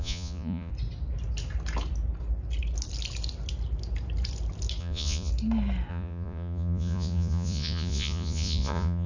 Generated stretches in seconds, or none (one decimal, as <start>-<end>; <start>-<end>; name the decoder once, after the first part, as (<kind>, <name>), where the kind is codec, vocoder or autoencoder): 0.0-0.7 (vocoder, Vocos); 4.8-5.3; 5.9-9.1